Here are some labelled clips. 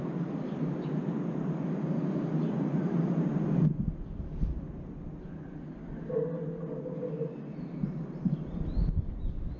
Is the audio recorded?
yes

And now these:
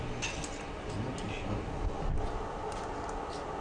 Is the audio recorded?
yes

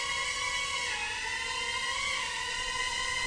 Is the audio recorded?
yes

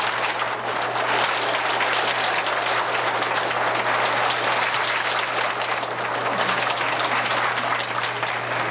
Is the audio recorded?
yes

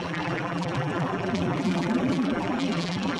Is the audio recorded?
no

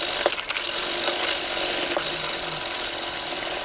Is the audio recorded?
yes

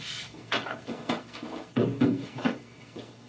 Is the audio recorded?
no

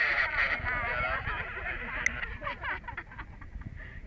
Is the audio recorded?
yes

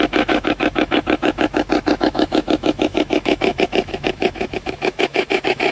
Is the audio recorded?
no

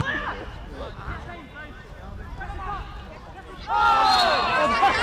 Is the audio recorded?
yes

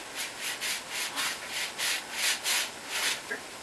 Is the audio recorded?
yes